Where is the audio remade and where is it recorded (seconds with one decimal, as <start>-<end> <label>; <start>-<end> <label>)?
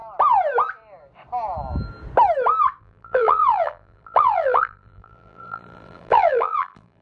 0.0-2.8 recorded; 2.8-7.0 remade